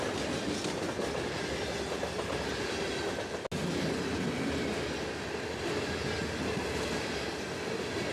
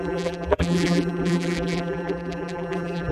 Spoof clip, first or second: second